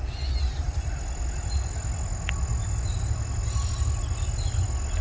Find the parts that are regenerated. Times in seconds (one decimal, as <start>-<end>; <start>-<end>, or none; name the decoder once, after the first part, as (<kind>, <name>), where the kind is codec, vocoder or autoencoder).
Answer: none

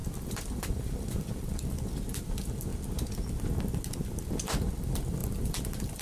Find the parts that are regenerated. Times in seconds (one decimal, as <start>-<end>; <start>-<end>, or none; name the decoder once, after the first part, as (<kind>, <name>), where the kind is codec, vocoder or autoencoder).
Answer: 0.0-2.7 (vocoder, BigVGAN v2); 4.3-6.0

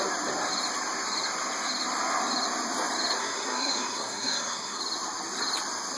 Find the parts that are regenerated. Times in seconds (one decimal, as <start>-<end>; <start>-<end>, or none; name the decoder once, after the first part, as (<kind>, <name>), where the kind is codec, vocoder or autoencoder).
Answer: 3.2-4.8 (codec, SNAC)

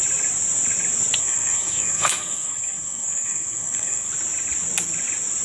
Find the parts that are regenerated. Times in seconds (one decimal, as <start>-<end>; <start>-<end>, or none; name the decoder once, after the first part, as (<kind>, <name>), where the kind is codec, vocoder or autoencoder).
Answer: 1.2-4.1 (codec, SNAC)

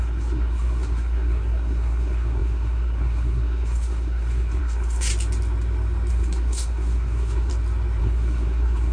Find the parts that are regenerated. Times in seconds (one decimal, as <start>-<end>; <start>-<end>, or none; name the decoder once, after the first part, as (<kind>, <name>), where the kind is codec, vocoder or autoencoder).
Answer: 0.0-5.1 (codec, SNAC); 6.1-7.5; 8.0-8.9

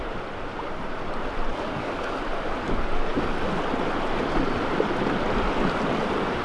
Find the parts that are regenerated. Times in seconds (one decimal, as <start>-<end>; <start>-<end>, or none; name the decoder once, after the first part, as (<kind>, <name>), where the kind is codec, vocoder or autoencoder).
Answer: 1.5-2.2 (codec, DAC)

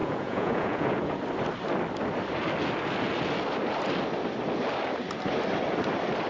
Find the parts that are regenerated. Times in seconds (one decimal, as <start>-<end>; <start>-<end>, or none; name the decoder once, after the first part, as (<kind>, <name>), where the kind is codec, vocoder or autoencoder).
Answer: 0.0-1.2 (vocoder, Vocos)